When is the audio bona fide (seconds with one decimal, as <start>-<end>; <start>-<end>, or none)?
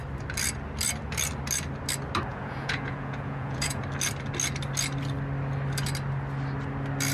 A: 0.0-2.3; 3.8-7.1